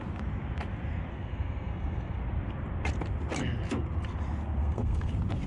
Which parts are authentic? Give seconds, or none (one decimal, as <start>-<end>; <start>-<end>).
0.0-1.1; 2.2-4.6; 5.1-5.5